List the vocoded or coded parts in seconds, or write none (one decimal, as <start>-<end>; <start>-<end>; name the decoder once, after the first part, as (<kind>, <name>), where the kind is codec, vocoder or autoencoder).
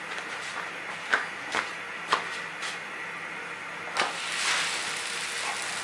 none